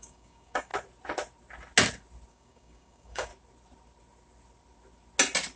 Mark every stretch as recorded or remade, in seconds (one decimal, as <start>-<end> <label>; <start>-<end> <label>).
0.0-0.7 remade; 0.7-2.3 recorded; 2.3-3.3 remade; 3.3-5.6 recorded